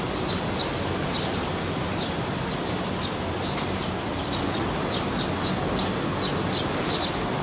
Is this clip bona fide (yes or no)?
yes